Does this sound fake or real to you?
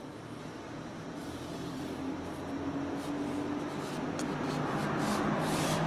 real